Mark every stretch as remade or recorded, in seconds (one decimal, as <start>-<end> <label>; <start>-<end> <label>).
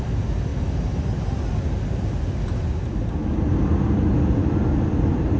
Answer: 0.0-5.4 recorded